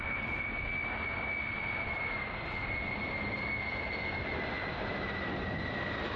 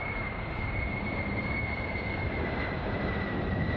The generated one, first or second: second